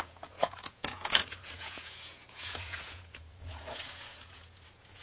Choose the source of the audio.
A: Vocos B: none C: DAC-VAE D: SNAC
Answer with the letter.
A